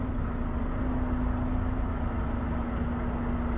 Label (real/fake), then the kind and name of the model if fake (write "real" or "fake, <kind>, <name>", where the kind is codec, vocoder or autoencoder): real